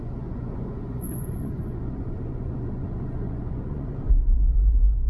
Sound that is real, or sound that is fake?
fake